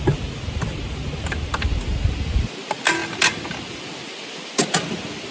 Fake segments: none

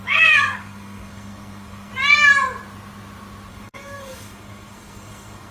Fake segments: 0.0-1.9 (codec, SNAC); 3.5-5.5

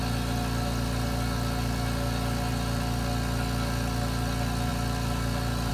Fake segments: none

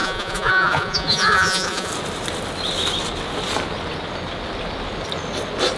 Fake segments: 0.0-1.9 (vocoder, Vocos)